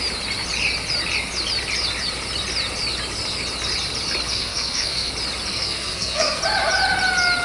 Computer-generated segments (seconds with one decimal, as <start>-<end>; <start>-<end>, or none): 4.3-5.1; 5.5-6.4

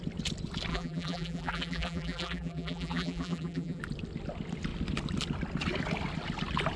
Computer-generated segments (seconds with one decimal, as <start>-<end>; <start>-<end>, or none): 0.7-3.8